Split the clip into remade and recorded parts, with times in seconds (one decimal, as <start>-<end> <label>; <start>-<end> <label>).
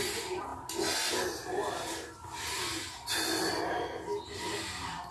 0.0-5.1 recorded